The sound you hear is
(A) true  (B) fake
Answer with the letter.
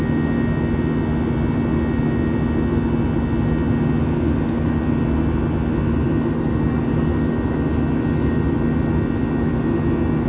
A